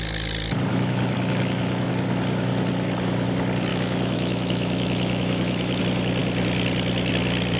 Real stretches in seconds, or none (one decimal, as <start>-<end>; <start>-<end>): 0.0-0.7; 1.9-3.7; 5.8-7.6